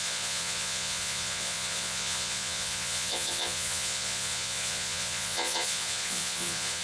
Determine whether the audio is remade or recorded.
remade